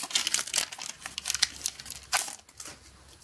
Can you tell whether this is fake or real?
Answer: real